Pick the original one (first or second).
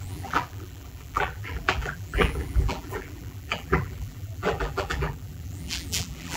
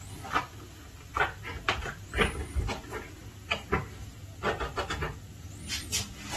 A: second